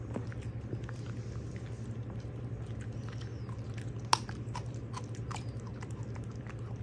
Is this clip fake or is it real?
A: real